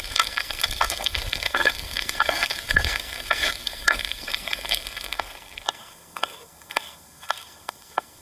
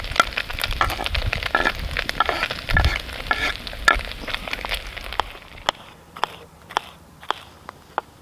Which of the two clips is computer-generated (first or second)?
first